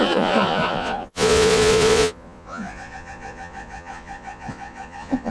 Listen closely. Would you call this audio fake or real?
fake